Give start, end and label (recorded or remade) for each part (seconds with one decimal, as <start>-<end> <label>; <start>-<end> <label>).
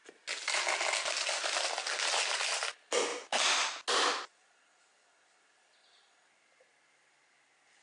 0.0-7.8 recorded